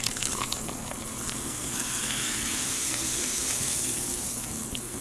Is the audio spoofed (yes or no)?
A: yes